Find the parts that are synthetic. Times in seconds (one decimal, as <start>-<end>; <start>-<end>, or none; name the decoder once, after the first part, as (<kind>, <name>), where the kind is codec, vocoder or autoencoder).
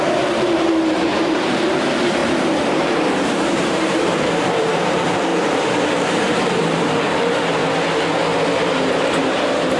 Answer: 0.0-7.6 (vocoder, BigVGAN v2); 8.7-9.8